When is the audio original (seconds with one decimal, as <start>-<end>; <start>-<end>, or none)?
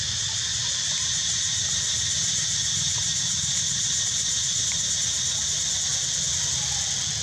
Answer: 0.0-7.2